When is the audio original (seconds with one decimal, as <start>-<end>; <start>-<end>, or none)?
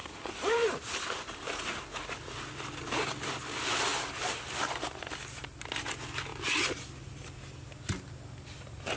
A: 1.8-3.9; 4.4-6.3; 7.5-9.0